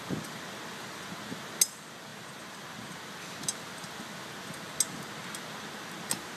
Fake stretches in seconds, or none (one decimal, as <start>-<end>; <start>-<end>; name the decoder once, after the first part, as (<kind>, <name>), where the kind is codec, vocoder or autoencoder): none